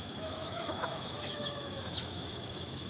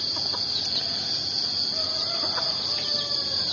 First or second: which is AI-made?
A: first